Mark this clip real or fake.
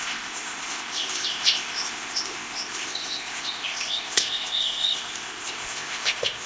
fake